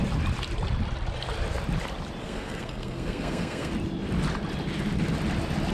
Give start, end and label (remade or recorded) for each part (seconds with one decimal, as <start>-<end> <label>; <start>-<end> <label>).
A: 0.0-2.2 recorded; 2.2-3.7 remade; 3.7-5.7 recorded